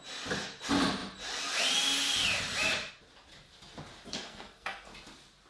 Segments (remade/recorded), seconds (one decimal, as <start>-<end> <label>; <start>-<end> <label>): 0.0-4.1 recorded; 4.1-4.9 remade; 4.9-5.5 recorded